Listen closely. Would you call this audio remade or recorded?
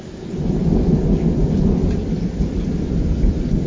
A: recorded